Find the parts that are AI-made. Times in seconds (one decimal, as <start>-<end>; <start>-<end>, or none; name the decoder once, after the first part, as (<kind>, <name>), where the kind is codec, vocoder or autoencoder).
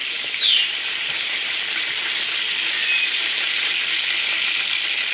0.0-2.2 (vocoder, BigVGAN v2); 2.9-3.7